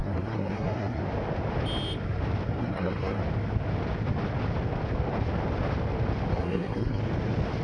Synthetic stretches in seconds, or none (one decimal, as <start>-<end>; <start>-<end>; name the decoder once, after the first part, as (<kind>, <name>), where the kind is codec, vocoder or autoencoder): 0.0-1.0 (codec, SNAC); 2.6-3.2; 6.3-7.0

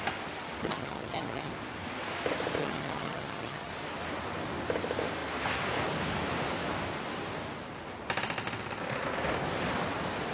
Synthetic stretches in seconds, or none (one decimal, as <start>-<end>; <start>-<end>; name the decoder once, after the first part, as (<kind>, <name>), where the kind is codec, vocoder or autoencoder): 0.6-1.5 (vocoder, HiFi-GAN); 2.6-3.7

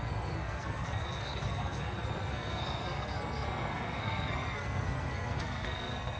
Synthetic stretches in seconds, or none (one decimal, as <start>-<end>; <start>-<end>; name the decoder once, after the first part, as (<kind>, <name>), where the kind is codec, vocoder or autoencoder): 0.0-6.2 (codec, SNAC)

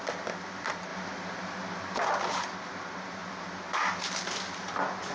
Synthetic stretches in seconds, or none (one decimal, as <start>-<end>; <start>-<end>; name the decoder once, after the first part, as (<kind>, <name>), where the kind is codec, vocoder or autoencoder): none

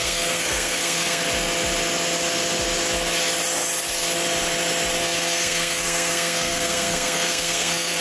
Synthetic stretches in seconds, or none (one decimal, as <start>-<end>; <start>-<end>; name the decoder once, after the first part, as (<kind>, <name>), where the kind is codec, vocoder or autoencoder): 0.0-1.2 (codec, SNAC); 5.0-8.0